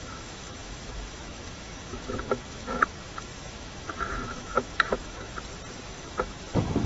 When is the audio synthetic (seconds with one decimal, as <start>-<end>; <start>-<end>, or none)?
0.0-5.3; 6.0-6.9